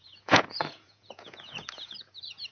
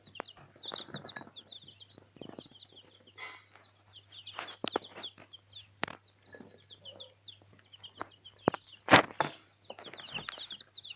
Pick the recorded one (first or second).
second